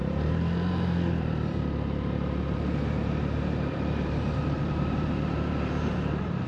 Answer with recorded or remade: remade